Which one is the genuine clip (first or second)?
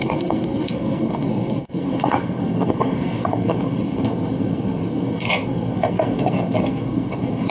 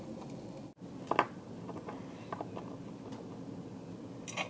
second